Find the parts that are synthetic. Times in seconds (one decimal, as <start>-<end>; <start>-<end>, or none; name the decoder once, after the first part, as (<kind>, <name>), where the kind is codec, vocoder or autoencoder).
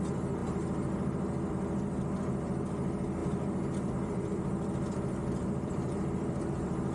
0.0-6.9 (vocoder, BigVGAN v2)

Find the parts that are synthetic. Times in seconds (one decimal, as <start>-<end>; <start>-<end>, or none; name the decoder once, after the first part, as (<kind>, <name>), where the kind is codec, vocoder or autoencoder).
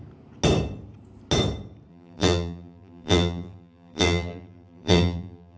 1.9-5.6 (vocoder, BigVGAN v2)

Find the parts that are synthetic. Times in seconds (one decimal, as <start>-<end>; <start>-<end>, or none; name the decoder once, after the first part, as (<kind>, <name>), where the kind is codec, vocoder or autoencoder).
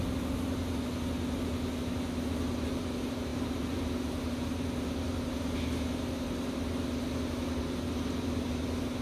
none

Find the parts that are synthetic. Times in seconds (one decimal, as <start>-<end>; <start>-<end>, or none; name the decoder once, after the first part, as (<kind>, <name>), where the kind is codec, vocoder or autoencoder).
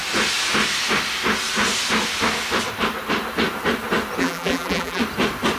4.2-5.0 (vocoder, BigVGAN v2)